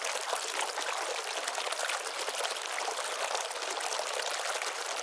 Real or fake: real